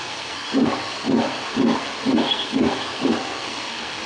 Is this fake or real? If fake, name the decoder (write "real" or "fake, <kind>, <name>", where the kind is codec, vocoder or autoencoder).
fake, codec, SNAC